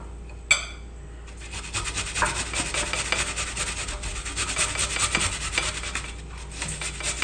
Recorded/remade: recorded